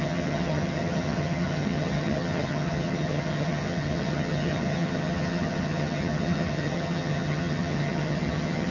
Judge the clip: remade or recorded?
remade